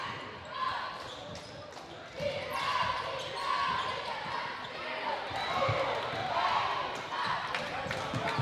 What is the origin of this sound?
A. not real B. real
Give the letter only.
B